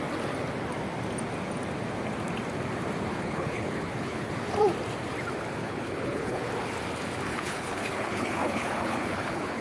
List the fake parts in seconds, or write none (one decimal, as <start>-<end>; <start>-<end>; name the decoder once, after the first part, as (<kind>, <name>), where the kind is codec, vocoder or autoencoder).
3.1-4.3 (codec, HILCodec); 5.6-6.5; 7.3-9.6